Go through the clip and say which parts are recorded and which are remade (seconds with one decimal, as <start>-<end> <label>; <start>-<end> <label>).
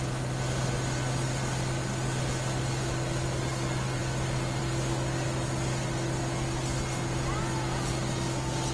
0.0-8.7 recorded